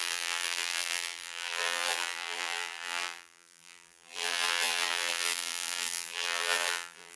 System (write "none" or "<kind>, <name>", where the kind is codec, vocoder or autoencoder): vocoder, BigVGAN v2